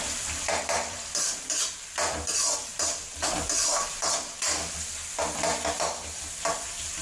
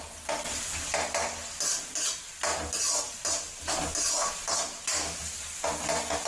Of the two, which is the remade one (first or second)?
first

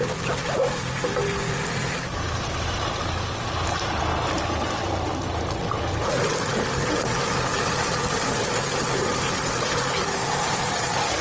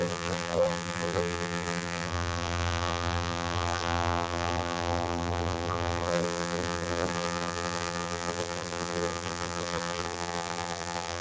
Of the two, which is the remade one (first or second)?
second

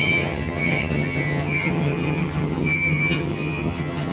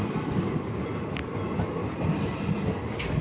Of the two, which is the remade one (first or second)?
first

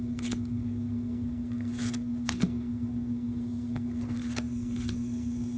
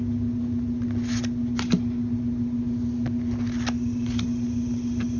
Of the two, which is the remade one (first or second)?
first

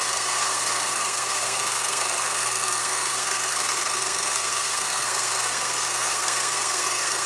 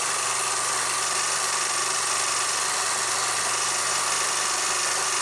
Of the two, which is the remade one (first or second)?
first